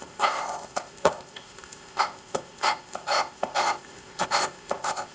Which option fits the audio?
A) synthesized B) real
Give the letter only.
A